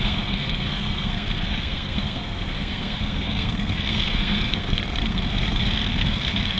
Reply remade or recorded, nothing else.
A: remade